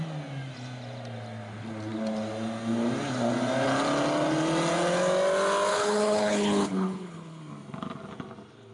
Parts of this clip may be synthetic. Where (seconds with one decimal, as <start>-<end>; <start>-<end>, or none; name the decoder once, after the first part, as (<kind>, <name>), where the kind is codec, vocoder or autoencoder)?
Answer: 5.7-7.4 (codec, HILCodec)